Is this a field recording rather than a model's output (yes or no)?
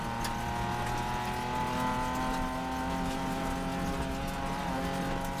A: yes